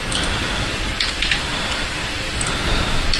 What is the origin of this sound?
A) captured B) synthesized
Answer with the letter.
A